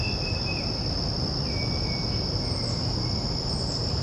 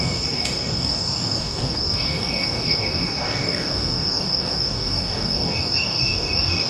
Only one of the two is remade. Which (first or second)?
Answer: second